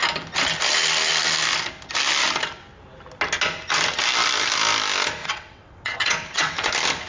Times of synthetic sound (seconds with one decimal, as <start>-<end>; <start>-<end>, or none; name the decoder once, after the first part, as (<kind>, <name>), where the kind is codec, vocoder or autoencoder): 5.2-6.5 (vocoder, WaveNeXt)